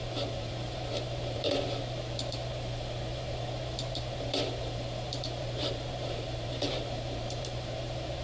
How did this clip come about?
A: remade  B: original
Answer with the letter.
A